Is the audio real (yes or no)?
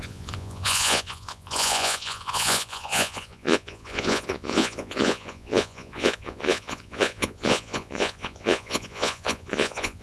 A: no